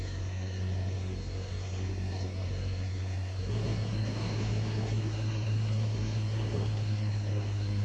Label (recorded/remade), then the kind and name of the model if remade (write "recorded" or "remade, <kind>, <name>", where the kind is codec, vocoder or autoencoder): remade, codec, SNAC